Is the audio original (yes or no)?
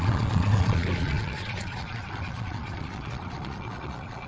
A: no